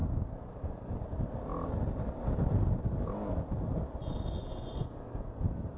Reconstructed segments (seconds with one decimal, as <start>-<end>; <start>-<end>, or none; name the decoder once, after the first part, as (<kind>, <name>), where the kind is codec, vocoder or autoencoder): none